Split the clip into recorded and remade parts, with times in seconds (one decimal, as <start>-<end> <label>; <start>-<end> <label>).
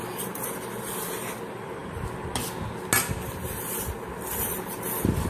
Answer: 0.0-5.3 recorded